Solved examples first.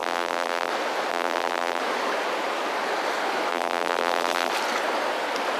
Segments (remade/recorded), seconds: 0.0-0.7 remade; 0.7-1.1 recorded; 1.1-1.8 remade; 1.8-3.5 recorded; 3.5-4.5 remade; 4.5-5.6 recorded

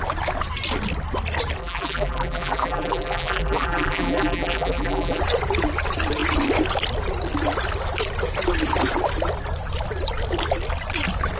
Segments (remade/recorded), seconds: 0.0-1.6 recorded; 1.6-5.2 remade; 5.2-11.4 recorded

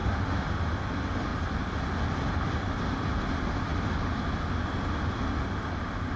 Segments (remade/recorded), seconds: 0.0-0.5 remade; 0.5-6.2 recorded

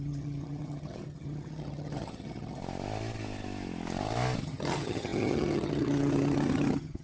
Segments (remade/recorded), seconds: 0.0-2.6 remade; 2.6-4.4 recorded; 4.4-7.0 remade

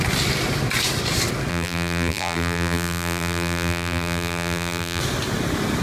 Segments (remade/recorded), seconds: 0.0-1.5 recorded; 1.5-5.0 remade; 5.0-5.8 recorded

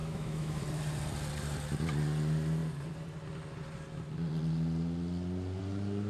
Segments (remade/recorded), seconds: 0.0-0.6 remade; 0.6-6.1 recorded

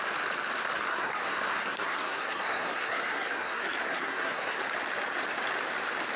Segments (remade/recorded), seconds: 0.0-0.9 recorded; 0.9-4.6 remade; 4.6-6.2 recorded

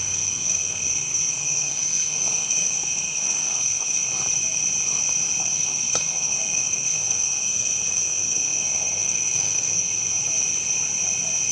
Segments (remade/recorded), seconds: 0.0-4.1 remade; 4.1-5.4 recorded; 5.4-10.2 remade; 10.2-11.5 recorded